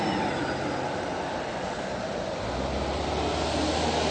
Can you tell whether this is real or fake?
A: real